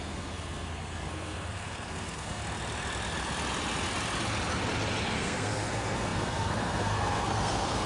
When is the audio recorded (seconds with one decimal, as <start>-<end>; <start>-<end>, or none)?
2.4-5.1